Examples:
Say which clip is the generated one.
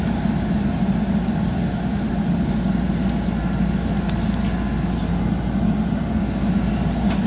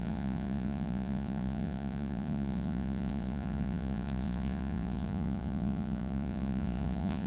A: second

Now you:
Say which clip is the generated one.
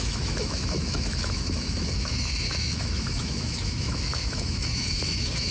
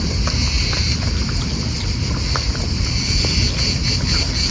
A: first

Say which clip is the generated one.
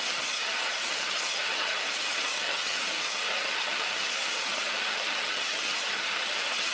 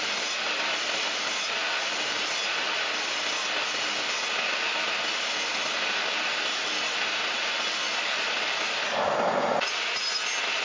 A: first